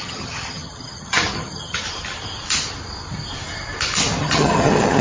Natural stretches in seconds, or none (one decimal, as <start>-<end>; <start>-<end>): 1.8-4.2

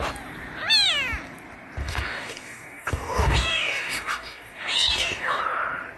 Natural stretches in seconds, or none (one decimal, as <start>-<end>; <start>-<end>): 0.0-1.8; 5.4-6.0